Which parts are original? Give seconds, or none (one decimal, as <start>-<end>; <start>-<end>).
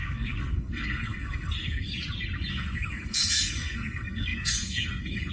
1.9-2.5